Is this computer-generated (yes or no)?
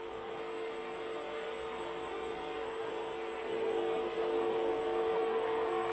yes